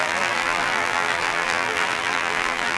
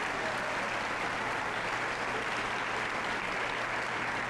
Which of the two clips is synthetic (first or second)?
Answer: first